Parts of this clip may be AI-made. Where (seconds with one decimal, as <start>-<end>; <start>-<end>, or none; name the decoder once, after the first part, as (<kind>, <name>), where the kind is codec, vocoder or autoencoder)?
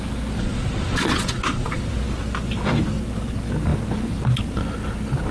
0.4-1.8 (vocoder, Vocos)